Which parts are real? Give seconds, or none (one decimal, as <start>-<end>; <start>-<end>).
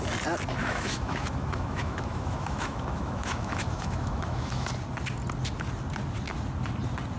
0.0-0.6; 4.7-7.2